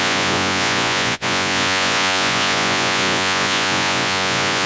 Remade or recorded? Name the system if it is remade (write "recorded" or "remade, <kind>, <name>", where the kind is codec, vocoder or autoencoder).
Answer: remade, vocoder, Vocos